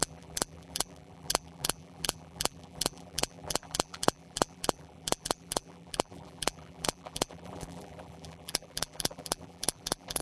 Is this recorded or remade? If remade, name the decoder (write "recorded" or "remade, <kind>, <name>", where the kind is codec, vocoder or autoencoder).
remade, vocoder, BigVGAN v2